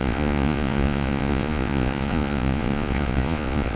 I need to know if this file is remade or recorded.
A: remade